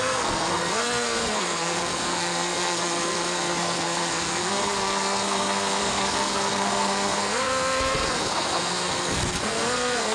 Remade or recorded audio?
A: remade